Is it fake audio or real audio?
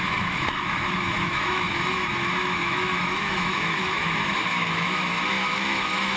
fake